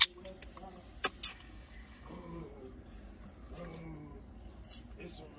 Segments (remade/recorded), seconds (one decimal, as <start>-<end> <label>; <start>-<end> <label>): 0.0-1.3 recorded; 1.3-2.4 remade; 2.4-5.4 recorded